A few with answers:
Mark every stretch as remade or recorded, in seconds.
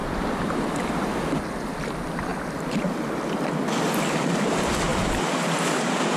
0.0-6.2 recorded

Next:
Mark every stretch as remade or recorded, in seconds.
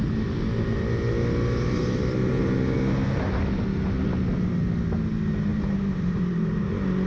0.0-2.2 recorded; 2.2-2.8 remade; 2.8-5.5 recorded; 5.5-6.6 remade; 6.6-7.1 recorded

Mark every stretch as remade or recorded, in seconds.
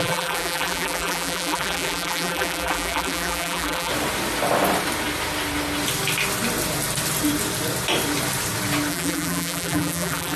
0.0-3.9 remade; 3.9-8.9 recorded; 8.9-10.4 remade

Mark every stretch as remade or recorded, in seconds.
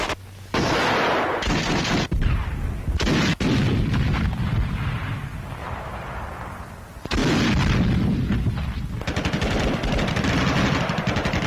0.0-5.6 recorded; 5.6-6.4 remade; 6.4-11.5 recorded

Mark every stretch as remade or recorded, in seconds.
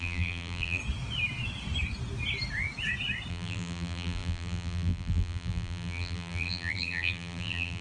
0.0-0.8 remade; 0.8-3.3 recorded; 3.3-7.8 remade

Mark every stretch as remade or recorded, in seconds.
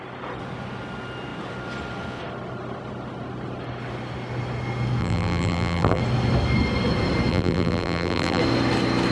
0.0-5.0 recorded; 5.0-6.0 remade; 6.0-7.3 recorded; 7.3-8.4 remade; 8.4-9.1 recorded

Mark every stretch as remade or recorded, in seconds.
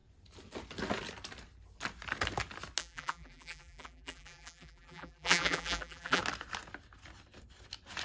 0.0-2.8 recorded; 2.8-6.2 remade; 6.2-8.0 recorded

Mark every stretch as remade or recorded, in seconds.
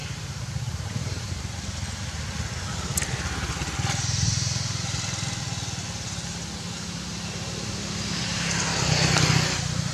0.0-1.3 remade; 1.3-9.9 recorded